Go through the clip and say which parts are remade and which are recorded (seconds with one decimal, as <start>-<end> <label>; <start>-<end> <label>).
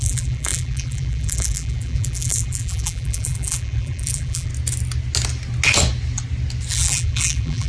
0.0-4.5 remade; 4.5-6.7 recorded; 6.7-7.7 remade